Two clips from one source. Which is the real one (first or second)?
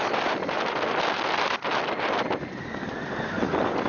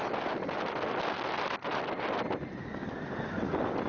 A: second